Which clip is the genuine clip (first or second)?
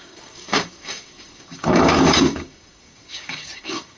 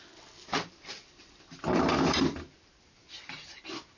second